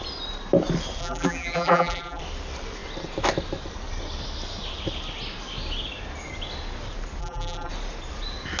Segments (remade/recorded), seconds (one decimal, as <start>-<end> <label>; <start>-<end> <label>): 0.0-1.0 recorded; 1.0-2.2 remade; 2.2-7.2 recorded; 7.2-7.7 remade; 7.7-8.6 recorded